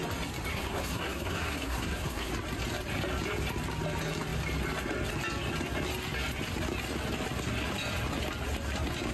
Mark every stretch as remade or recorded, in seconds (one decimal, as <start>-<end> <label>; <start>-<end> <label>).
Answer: 0.0-0.5 recorded; 0.5-2.3 remade; 2.3-9.1 recorded